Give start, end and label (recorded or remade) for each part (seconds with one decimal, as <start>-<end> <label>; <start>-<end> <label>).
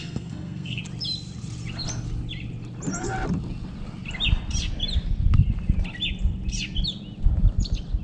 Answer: 0.0-0.8 remade; 0.8-8.0 recorded